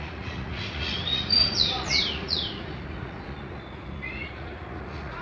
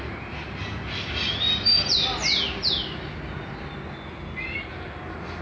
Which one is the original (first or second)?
second